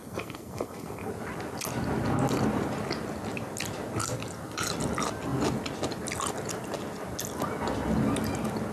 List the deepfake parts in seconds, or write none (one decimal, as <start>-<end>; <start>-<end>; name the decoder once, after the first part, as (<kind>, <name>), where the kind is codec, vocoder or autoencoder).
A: 0.0-1.1 (codec, SNAC)